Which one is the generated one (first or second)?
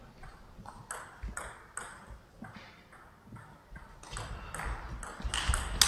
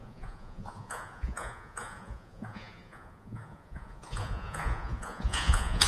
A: second